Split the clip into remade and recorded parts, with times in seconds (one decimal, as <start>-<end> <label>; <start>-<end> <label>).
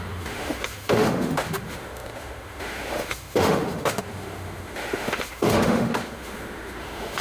0.0-7.2 remade